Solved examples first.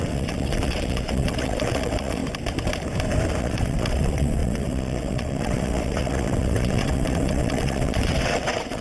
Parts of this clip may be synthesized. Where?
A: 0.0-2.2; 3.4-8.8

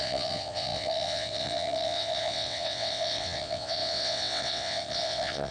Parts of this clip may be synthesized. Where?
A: 0.0-5.5

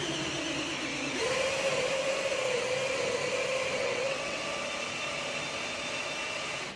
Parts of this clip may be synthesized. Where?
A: 3.8-4.4

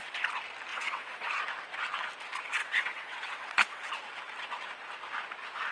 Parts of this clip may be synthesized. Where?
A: 0.7-1.3; 2.6-3.9